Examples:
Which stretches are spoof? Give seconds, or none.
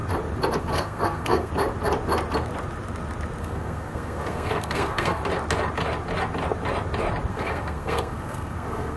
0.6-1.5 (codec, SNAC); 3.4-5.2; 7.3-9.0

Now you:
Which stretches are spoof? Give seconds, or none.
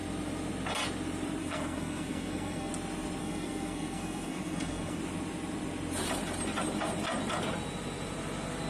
1.4-2.7 (codec, SNAC); 3.2-5.0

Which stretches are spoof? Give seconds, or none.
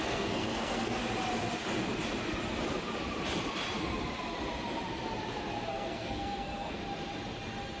0.0-1.0 (codec, SNAC); 5.7-6.8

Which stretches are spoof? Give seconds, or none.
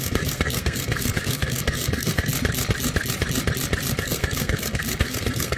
0.0-2.3 (codec, SNAC); 4.0-5.6